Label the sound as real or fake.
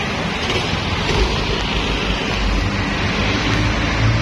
real